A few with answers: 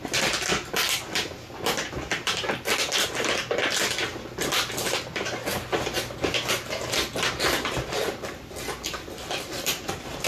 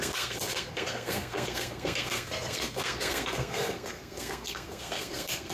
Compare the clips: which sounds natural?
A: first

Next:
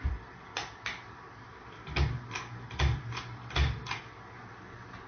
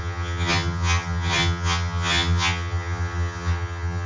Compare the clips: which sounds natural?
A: first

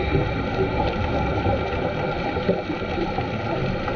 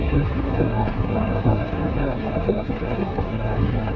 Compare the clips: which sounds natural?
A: first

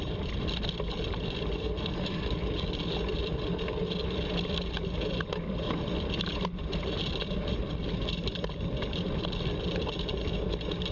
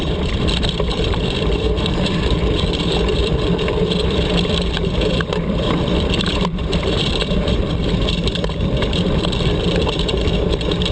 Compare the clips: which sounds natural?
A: first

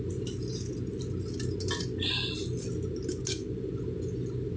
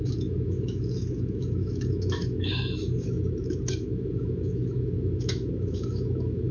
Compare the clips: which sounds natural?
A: first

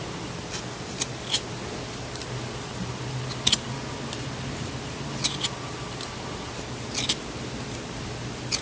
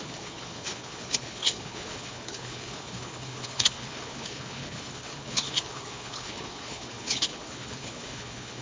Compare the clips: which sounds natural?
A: first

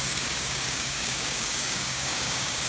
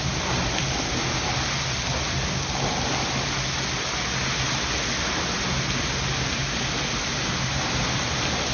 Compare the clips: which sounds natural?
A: second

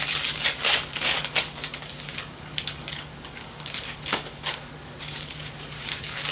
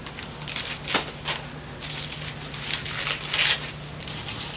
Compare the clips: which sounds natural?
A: second